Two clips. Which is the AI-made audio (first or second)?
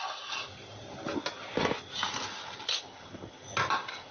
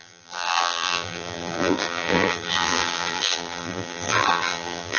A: second